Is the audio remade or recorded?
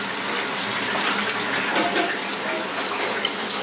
recorded